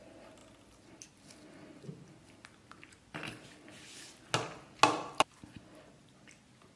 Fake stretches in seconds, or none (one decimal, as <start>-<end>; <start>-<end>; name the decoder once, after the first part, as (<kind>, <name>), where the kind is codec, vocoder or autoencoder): none